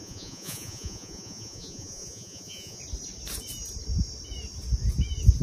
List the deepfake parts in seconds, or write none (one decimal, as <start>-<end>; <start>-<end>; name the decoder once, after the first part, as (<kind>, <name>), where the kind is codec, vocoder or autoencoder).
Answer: 0.0-2.8 (vocoder, Vocos)